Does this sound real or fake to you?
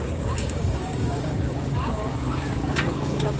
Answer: fake